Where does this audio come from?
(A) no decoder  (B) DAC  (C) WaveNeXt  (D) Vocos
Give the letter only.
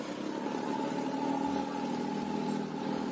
A